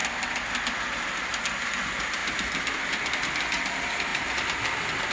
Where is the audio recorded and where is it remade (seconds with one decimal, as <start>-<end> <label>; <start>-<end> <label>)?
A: 0.0-5.1 recorded